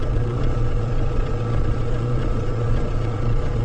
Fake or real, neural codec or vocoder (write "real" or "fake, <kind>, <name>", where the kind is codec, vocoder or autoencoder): fake, vocoder, Vocos